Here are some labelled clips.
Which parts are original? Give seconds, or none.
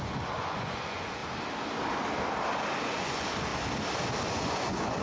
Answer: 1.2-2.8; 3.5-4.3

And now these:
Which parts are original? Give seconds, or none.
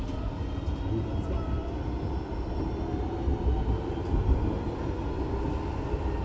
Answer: 0.0-6.2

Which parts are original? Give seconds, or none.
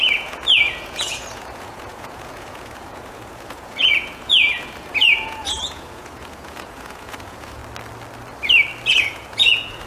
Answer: 7.6-8.9